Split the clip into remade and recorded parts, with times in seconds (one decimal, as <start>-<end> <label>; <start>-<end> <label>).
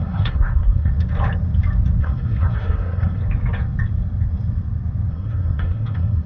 0.0-0.9 remade; 0.9-2.0 recorded; 2.0-3.2 remade; 3.2-5.1 recorded; 5.1-6.3 remade